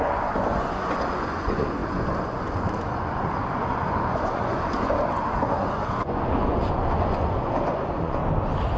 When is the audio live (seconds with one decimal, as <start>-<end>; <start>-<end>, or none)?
8.2-8.8